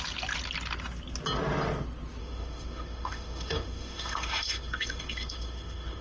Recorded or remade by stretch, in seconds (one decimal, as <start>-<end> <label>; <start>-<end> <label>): 0.0-2.2 recorded; 2.2-6.0 remade